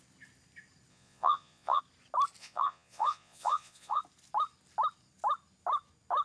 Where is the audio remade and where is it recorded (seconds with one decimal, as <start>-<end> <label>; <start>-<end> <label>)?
0.0-0.9 recorded; 0.9-1.8 remade; 1.8-2.4 recorded; 2.4-4.0 remade; 4.0-6.2 recorded